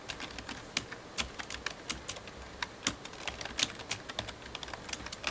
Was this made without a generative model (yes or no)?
yes